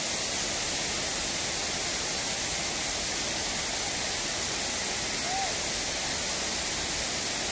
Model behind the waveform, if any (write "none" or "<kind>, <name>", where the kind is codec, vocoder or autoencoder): none